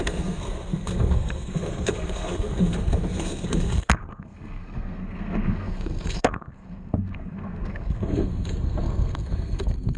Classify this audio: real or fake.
fake